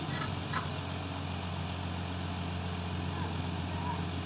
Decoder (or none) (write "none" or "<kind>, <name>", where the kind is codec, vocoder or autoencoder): none